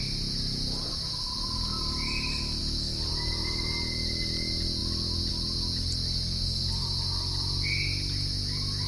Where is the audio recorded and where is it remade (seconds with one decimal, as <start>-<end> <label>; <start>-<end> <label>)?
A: 0.0-8.9 recorded